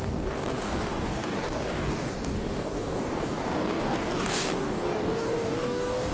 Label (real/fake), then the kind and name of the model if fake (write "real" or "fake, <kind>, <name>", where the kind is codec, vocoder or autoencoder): fake, codec, DAC